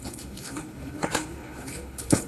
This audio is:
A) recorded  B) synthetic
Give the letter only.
B